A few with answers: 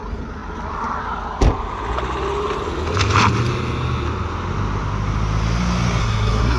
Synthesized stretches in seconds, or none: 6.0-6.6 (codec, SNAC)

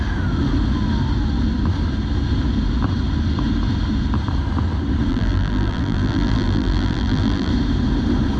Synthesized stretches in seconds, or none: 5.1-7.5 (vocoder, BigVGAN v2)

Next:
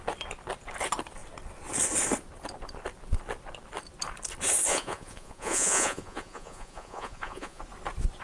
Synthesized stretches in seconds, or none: 4.7-7.6 (vocoder, Vocos)

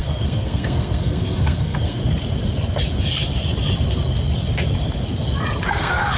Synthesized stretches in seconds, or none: 0.0-2.0 (codec, SNAC); 5.7-6.2

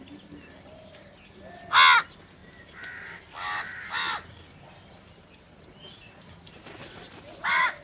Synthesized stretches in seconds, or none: none